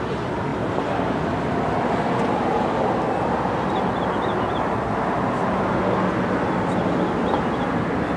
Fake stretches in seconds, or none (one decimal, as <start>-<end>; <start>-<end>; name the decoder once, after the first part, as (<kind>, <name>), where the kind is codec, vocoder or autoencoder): none